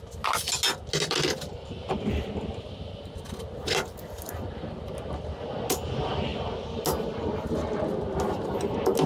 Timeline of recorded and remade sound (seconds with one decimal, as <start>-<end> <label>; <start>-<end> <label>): 0.0-9.1 recorded